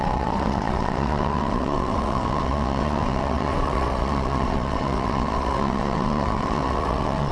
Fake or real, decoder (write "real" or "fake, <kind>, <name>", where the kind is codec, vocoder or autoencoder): fake, vocoder, WaveNeXt